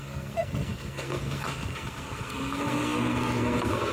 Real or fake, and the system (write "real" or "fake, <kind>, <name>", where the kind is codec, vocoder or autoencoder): fake, codec, SNAC